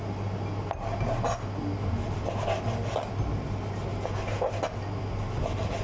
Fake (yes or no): no